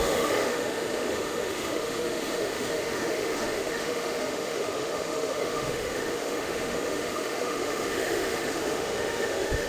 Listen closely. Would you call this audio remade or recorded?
remade